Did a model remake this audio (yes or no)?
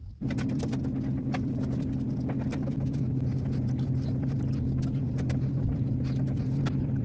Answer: yes